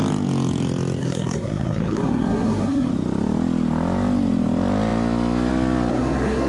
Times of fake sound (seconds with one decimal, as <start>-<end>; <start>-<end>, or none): 1.0-2.9; 5.9-6.5